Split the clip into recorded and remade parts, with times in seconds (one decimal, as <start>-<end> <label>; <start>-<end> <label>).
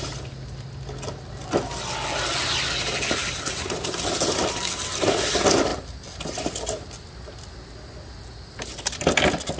0.0-9.6 recorded